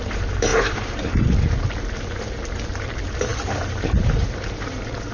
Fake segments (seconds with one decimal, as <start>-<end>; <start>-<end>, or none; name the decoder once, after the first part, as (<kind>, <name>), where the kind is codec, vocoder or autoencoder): 0.0-5.1 (vocoder, BigVGAN v2)